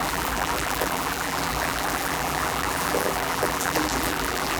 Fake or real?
fake